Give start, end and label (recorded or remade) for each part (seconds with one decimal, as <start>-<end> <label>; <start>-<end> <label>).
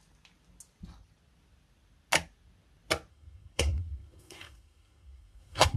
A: 0.0-3.1 recorded; 3.1-5.8 remade